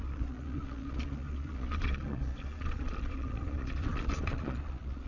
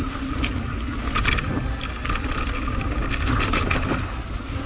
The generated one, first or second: first